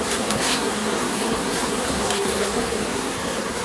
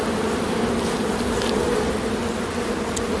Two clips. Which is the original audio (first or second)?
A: second